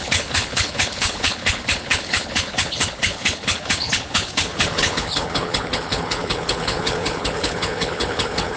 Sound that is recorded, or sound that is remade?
remade